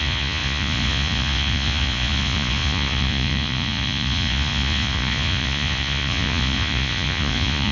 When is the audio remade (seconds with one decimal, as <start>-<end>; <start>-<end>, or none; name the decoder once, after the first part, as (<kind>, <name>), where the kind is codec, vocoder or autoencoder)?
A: 0.0-7.7 (vocoder, Vocos)